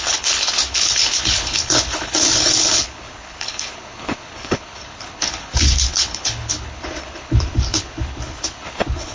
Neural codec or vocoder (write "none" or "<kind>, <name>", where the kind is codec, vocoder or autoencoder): codec, HILCodec